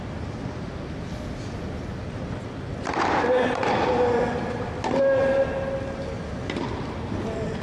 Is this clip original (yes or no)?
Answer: yes